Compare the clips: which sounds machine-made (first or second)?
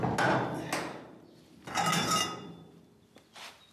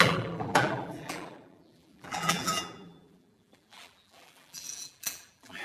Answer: second